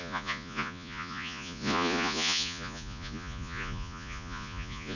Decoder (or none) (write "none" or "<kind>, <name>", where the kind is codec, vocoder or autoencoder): vocoder, Vocos